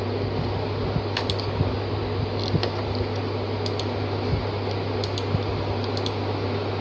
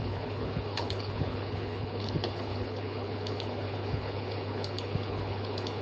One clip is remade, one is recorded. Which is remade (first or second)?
second